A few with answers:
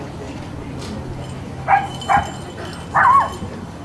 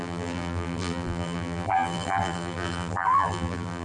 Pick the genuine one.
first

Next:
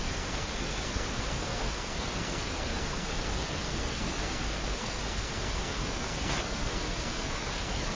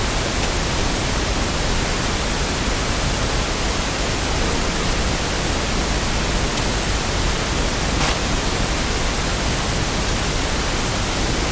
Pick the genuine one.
second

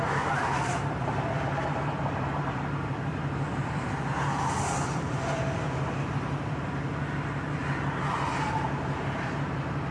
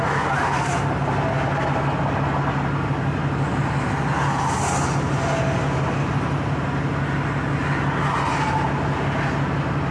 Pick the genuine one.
second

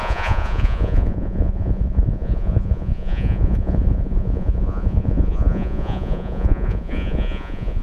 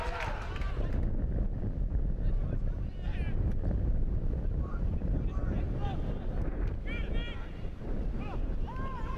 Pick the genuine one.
second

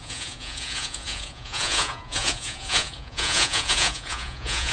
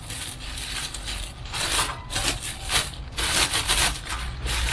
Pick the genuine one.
second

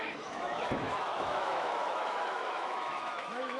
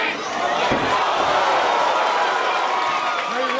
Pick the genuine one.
second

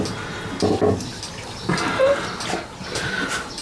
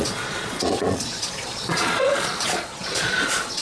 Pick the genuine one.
first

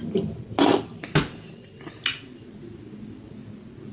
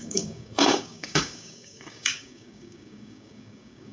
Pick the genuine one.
first